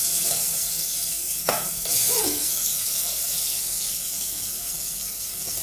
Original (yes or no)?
no